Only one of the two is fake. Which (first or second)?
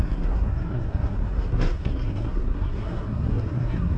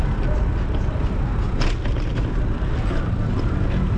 first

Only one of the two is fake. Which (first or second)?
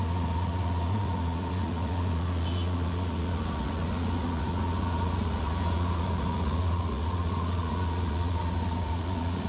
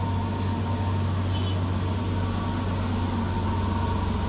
first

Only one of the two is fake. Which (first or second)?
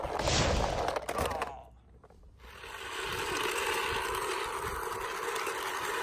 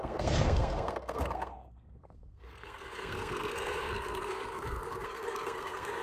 second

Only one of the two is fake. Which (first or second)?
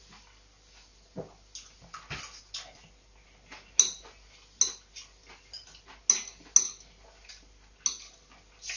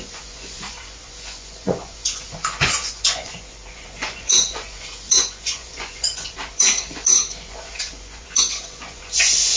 second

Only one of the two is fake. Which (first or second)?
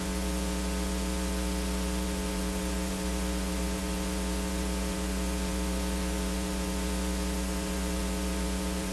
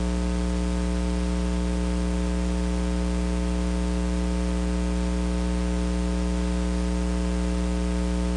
first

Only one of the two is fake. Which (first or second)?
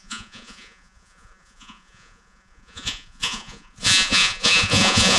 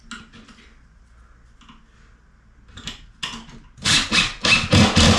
first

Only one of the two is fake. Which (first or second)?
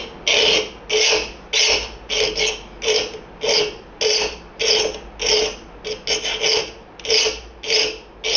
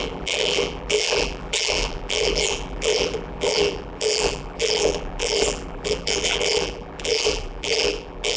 second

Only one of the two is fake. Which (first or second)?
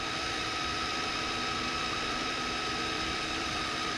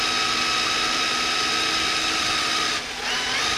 first